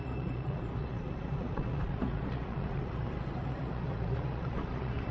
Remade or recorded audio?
remade